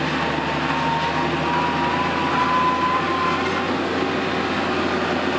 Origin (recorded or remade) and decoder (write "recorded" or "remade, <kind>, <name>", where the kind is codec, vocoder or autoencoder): recorded